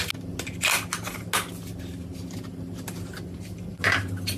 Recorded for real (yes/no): yes